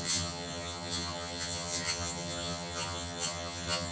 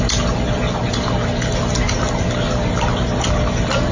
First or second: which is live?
second